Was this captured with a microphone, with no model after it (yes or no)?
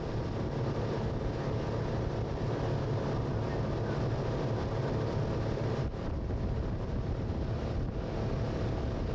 yes